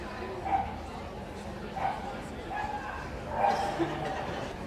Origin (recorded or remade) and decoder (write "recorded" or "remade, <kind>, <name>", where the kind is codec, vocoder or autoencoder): recorded